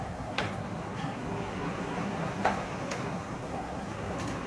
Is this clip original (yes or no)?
no